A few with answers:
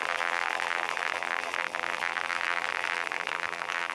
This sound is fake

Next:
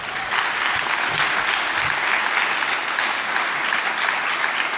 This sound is real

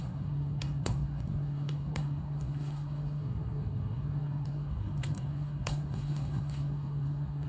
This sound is fake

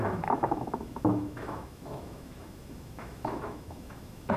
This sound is fake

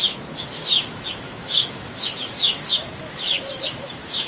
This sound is fake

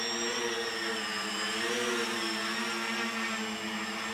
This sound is real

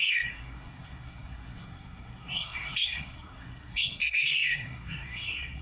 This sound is fake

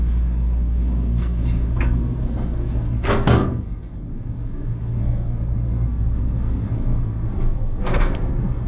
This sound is fake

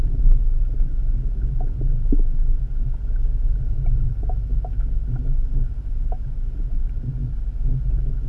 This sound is real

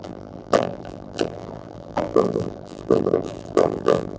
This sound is fake